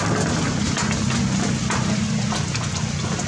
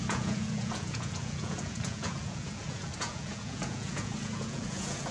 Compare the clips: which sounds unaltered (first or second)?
first